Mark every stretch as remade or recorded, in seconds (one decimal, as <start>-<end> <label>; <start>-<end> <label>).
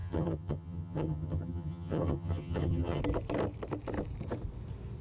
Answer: 0.0-3.0 remade; 3.0-5.0 recorded